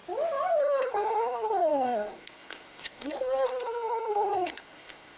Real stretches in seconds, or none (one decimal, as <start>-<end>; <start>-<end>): 0.0-0.6